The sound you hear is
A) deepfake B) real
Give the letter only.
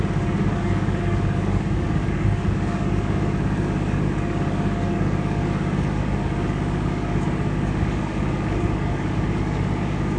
A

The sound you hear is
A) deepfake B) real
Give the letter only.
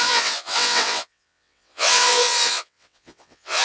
A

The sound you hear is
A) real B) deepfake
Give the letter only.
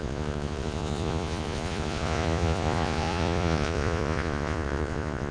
B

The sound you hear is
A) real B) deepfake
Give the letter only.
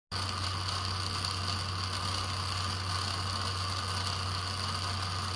A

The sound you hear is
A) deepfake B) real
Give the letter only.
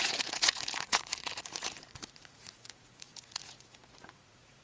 A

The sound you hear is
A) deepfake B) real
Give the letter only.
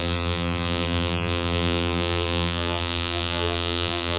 A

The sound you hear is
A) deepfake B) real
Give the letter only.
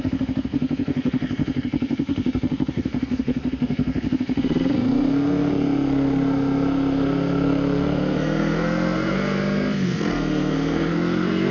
A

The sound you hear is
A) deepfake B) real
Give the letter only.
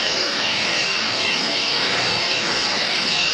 A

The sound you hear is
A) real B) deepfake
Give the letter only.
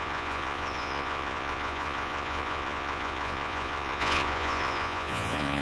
B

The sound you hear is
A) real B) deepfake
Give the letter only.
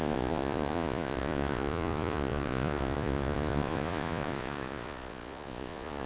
B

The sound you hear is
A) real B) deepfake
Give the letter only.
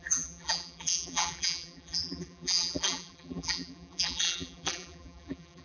B